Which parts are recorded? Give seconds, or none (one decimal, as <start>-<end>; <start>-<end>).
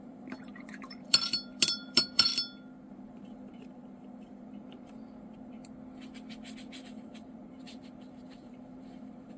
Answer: 2.3-2.9; 5.6-6.8